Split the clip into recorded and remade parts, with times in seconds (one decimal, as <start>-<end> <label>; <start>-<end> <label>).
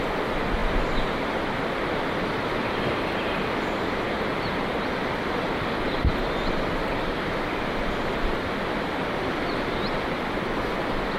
0.0-11.2 recorded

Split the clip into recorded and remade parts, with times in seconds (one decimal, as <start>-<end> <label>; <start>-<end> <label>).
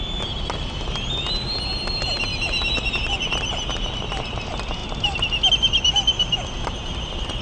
0.0-7.4 recorded